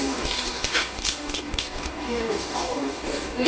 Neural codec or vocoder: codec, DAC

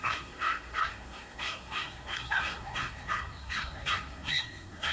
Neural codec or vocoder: codec, SNAC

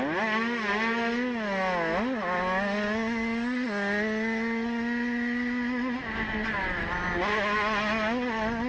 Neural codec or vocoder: none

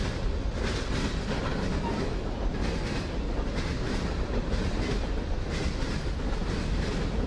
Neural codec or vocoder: none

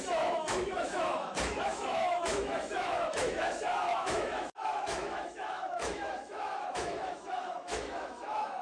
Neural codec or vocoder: autoencoder, DAC-VAE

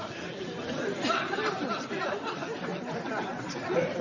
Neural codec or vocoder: none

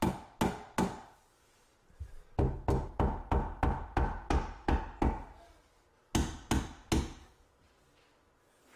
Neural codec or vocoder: none